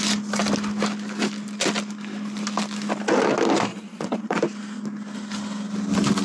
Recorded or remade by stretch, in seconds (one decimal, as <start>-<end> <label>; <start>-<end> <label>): 0.0-3.7 recorded; 3.7-4.4 remade; 4.4-6.2 recorded